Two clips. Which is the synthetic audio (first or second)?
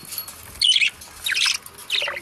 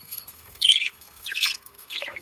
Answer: second